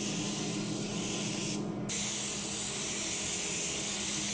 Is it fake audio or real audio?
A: real